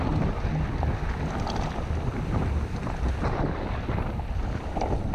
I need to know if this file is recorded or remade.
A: recorded